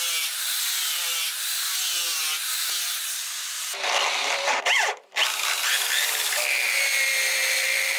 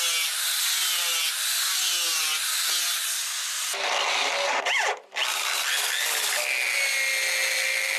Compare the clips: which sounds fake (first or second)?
first